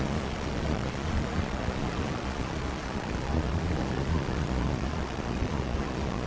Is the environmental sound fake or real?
fake